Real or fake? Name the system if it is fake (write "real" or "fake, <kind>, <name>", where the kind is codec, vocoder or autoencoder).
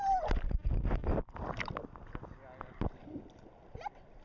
real